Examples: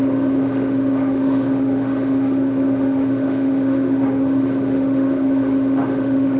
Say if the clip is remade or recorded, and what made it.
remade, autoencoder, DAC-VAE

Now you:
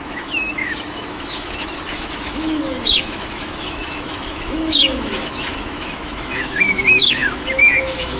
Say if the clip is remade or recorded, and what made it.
remade, autoencoder, DAC-VAE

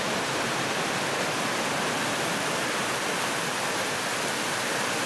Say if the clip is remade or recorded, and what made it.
recorded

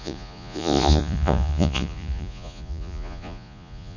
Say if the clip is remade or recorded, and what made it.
remade, vocoder, Vocos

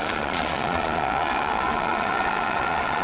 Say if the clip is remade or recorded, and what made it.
remade, vocoder, Vocos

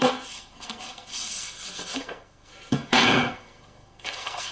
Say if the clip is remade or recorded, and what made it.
remade, codec, SNAC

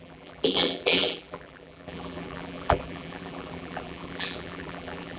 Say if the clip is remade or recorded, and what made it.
remade, vocoder, BigVGAN v2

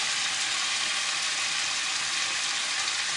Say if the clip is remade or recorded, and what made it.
recorded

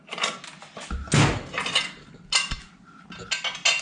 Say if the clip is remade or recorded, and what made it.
recorded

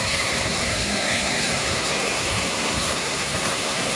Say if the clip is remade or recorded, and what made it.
remade, codec, SNAC